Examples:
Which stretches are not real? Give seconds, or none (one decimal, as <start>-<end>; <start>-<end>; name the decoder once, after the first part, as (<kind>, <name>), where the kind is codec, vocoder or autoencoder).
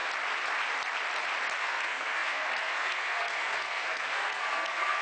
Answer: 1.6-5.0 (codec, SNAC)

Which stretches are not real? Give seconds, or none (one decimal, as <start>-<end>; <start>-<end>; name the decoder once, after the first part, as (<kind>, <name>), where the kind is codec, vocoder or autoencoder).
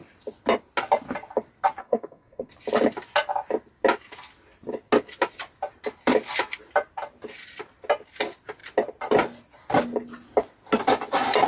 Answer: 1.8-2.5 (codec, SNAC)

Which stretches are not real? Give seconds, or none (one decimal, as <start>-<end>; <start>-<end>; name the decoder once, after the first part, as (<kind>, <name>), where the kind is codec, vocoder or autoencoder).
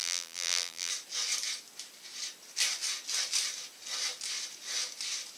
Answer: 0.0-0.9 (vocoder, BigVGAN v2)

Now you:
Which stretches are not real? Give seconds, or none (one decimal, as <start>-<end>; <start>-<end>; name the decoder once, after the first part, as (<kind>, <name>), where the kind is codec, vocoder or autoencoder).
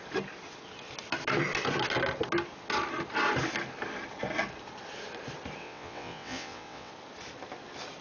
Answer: 5.6-6.9 (vocoder, WaveNeXt)